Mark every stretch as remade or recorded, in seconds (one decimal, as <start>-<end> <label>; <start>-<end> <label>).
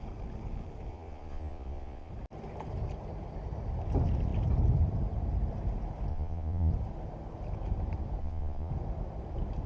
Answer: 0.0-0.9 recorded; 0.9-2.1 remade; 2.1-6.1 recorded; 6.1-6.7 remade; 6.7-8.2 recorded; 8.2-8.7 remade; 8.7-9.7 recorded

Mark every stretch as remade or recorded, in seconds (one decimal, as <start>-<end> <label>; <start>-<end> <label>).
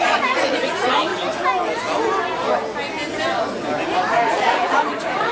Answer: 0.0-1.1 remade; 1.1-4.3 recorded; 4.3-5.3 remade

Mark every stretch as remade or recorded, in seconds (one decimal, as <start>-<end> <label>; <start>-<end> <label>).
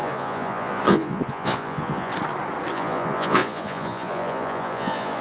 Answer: 0.0-2.1 remade; 2.1-2.7 recorded; 2.7-5.2 remade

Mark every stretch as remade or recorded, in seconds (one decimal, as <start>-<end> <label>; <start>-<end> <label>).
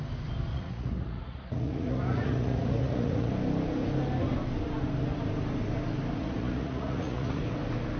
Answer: 0.0-0.5 recorded; 0.5-3.3 remade; 3.3-6.2 recorded; 6.2-7.4 remade; 7.4-8.0 recorded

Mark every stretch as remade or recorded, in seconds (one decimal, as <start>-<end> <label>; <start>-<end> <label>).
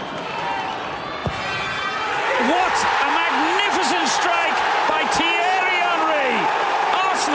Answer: 0.0-7.3 recorded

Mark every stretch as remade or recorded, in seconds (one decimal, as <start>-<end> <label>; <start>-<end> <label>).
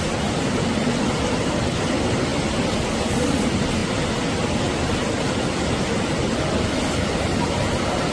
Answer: 0.0-8.1 recorded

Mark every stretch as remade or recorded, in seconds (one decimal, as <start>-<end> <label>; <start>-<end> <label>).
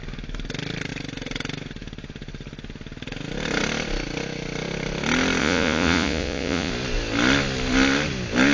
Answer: 0.0-5.4 recorded; 5.4-6.7 remade; 6.7-8.5 recorded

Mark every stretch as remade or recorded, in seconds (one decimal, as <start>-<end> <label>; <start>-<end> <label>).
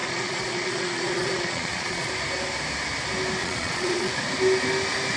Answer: 0.0-2.1 remade; 2.1-3.4 recorded; 3.4-4.1 remade; 4.1-5.2 recorded